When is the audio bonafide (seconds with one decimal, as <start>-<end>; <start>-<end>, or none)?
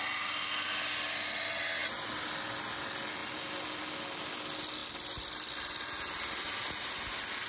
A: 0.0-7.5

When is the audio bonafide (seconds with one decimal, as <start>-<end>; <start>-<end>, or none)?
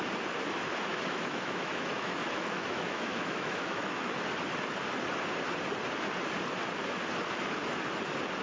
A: 0.0-0.9; 4.1-8.4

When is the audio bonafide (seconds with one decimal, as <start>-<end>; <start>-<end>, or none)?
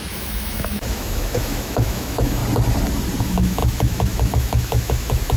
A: 2.4-3.2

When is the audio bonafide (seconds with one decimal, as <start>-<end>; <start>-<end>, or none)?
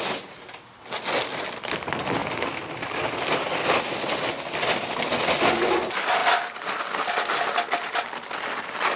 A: 0.0-9.0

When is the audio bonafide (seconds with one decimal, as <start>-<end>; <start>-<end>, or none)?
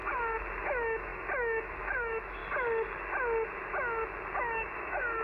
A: 0.0-0.6; 2.4-4.4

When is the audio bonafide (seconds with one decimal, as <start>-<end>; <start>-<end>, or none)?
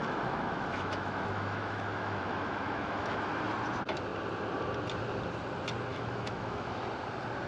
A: 3.3-5.9; 6.8-7.5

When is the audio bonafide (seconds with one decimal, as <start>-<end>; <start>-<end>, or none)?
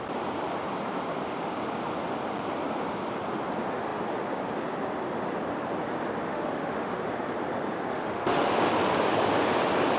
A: 0.0-6.3; 7.0-7.9; 8.5-10.0